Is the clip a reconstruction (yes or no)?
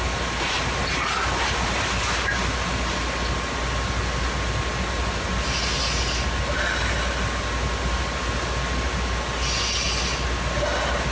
no